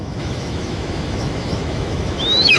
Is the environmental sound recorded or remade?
remade